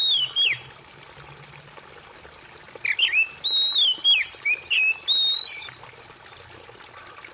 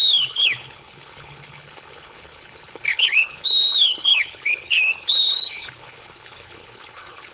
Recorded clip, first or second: first